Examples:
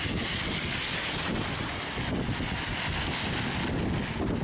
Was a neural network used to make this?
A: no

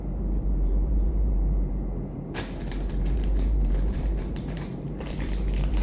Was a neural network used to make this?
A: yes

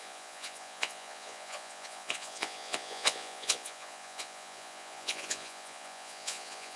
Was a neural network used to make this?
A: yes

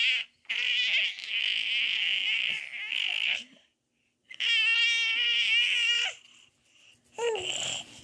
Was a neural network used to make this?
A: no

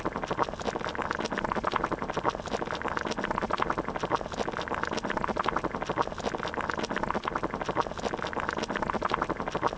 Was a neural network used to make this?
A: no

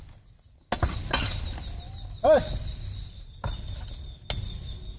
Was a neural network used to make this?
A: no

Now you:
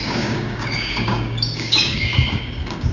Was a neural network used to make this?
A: yes